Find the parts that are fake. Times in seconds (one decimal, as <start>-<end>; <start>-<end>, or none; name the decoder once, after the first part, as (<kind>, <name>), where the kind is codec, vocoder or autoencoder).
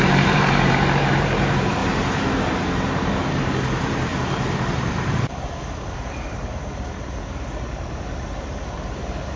0.0-1.8 (vocoder, BigVGAN v2); 3.3-9.4